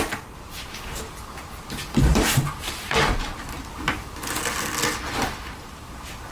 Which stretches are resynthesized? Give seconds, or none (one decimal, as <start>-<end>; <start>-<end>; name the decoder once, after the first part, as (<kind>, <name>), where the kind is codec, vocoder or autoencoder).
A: 2.1-3.6 (vocoder, BigVGAN v2)